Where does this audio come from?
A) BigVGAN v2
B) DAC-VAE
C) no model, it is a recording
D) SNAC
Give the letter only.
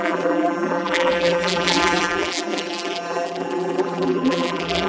A